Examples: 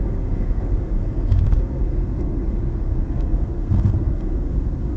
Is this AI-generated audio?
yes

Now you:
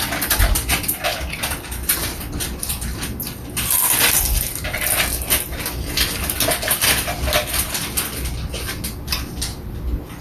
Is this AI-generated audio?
no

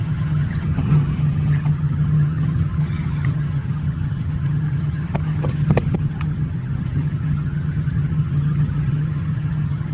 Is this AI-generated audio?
yes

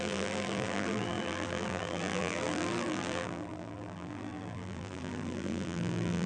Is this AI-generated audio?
yes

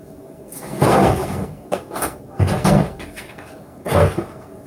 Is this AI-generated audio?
yes